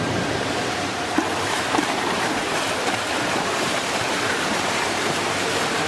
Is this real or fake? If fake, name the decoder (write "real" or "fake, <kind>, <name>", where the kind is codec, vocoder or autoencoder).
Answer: fake, vocoder, BigVGAN v2